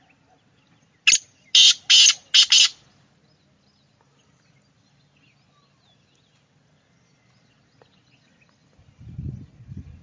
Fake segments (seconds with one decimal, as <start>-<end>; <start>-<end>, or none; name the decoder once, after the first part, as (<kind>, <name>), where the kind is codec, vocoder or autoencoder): none